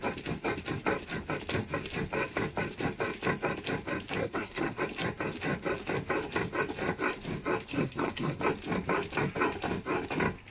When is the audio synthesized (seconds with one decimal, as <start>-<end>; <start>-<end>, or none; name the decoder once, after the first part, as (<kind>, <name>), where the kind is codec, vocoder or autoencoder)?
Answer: 4.2-4.8 (codec, SNAC); 7.7-8.4